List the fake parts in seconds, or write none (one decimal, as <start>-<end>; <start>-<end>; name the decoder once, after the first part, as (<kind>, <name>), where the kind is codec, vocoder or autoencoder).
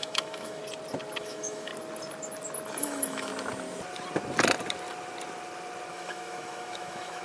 0.0-0.6 (autoencoder, DAC-VAE); 1.2-1.7; 2.8-3.3; 5.9-7.2